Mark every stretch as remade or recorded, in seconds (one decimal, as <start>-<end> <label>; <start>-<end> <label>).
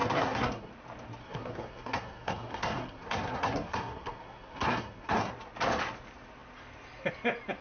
0.0-0.7 remade; 0.7-1.2 recorded; 1.2-5.3 remade; 5.3-7.6 recorded